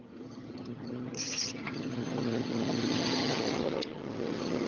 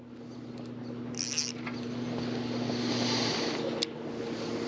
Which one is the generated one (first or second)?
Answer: first